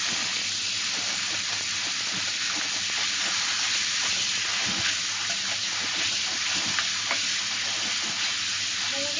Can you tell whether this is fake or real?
real